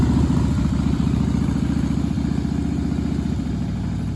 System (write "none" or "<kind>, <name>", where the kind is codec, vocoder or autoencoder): none